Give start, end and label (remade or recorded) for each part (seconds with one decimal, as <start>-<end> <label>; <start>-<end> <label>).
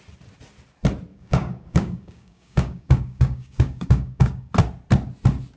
0.0-1.1 recorded; 1.1-4.5 remade; 4.5-5.6 recorded